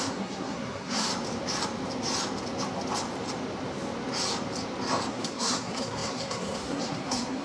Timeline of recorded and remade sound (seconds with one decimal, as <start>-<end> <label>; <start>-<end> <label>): 0.0-1.1 remade; 1.1-5.1 recorded; 5.1-7.4 remade

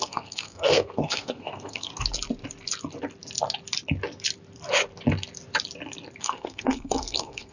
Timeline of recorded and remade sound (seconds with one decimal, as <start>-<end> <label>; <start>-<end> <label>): 0.0-1.9 remade; 1.9-6.2 recorded; 6.2-7.5 remade